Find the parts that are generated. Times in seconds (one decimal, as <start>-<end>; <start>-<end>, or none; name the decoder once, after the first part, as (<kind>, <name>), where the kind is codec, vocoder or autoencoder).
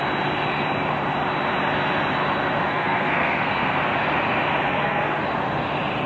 2.6-3.8 (codec, SNAC); 4.7-5.2